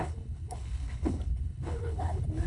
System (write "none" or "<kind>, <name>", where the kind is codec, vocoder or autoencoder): codec, HILCodec